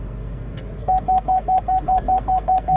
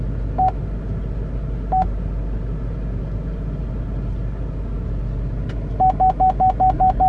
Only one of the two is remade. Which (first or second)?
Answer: first